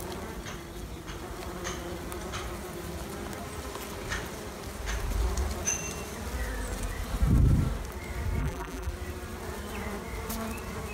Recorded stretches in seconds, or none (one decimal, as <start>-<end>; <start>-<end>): 0.0-8.4; 8.9-10.9